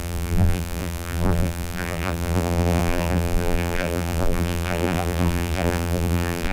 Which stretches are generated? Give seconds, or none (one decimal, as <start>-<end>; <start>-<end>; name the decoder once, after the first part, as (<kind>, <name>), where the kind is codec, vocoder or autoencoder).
0.0-6.5 (vocoder, BigVGAN v2)